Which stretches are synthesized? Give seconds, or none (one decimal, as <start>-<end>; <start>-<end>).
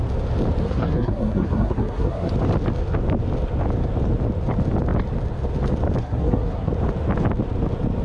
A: 0.6-2.3; 6.0-6.7